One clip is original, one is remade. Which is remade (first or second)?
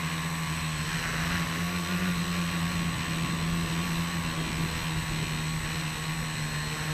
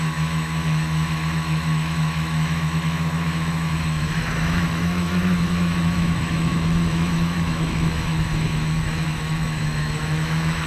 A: second